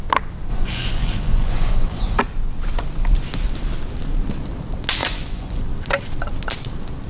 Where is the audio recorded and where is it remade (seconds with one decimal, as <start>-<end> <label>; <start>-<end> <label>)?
0.0-0.5 recorded; 0.5-2.2 remade; 2.2-5.0 recorded; 5.0-5.6 remade; 5.6-7.1 recorded